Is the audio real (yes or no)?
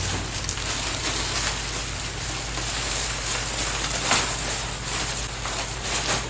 no